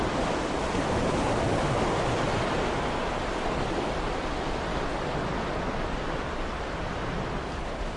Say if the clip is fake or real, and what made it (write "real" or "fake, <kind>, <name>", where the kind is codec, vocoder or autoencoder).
real